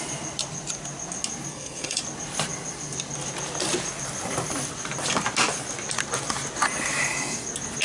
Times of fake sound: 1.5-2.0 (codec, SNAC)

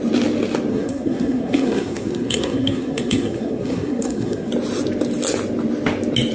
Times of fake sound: 0.7-4.5 (codec, SNAC)